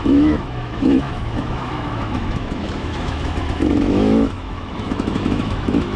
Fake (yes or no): yes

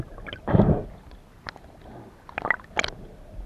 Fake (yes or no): no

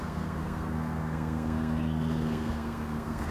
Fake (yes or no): yes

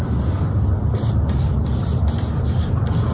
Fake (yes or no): no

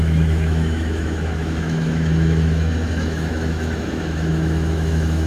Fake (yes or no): yes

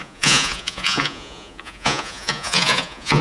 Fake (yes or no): yes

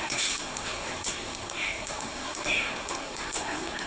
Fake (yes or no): yes